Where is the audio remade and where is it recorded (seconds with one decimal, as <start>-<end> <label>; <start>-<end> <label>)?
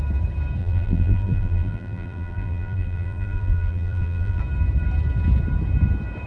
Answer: 0.0-0.6 recorded; 0.6-4.4 remade; 4.4-6.3 recorded